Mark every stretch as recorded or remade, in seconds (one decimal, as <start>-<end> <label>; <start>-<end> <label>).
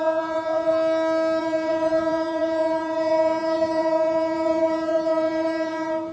0.0-0.7 remade; 0.7-1.4 recorded; 1.4-6.1 remade